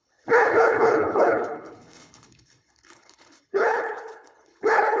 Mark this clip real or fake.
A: fake